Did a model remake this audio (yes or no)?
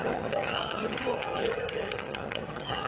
yes